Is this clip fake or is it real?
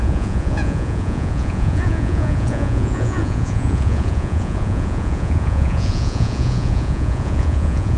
fake